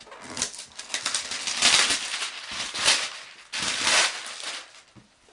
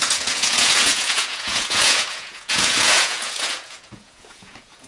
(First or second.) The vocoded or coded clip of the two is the second